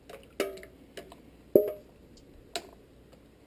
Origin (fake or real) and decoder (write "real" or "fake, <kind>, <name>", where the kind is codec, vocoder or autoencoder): real